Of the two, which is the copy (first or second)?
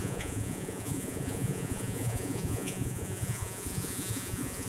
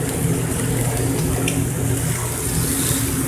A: first